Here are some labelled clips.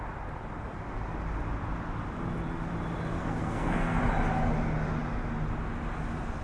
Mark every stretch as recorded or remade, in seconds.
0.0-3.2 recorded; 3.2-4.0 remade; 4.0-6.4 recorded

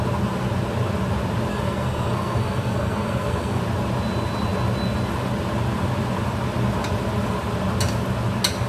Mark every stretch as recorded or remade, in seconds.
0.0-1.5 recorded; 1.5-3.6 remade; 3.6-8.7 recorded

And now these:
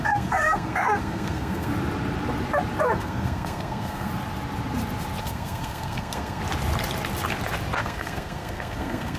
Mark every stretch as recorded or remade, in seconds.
0.0-1.7 remade; 1.7-2.8 recorded; 2.8-4.1 remade; 4.1-5.2 recorded; 5.2-6.4 remade; 6.4-7.8 recorded; 7.8-9.2 remade

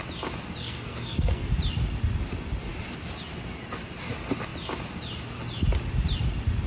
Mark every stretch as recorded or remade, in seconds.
0.0-0.6 recorded; 0.6-1.5 remade; 1.5-6.7 recorded